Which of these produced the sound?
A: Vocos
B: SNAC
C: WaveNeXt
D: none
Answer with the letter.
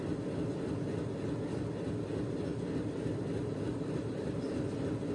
D